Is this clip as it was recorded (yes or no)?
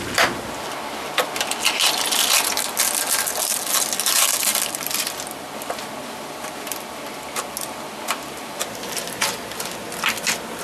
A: yes